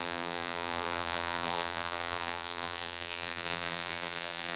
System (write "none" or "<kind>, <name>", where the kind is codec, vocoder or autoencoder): vocoder, BigVGAN v2